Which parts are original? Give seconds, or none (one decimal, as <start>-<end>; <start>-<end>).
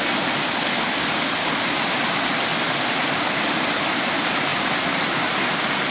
0.0-5.9